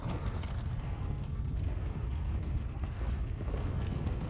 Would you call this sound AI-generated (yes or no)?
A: yes